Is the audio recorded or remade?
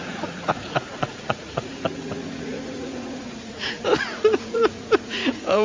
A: remade